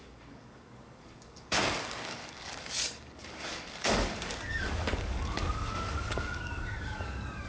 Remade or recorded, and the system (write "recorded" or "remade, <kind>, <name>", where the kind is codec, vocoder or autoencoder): remade, codec, DAC